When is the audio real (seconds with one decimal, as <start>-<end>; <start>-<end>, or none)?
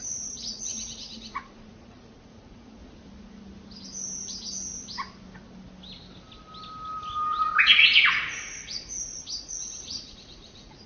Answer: 2.8-7.6